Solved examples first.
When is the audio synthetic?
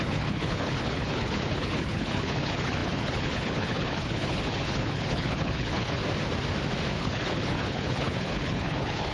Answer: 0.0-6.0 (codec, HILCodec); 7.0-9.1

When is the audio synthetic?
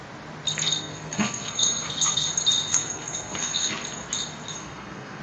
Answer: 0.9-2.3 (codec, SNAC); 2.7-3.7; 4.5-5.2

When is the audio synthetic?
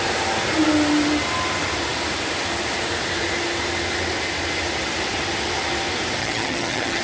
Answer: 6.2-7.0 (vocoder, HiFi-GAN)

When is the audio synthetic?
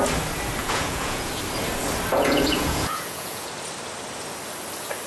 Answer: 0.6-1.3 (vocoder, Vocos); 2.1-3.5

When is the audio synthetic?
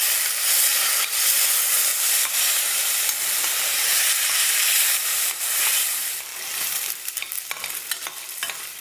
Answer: 1.9-5.6 (vocoder, BigVGAN v2); 6.3-7.3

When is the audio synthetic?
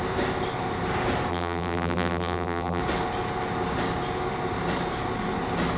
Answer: 1.3-2.8 (vocoder, BigVGAN v2)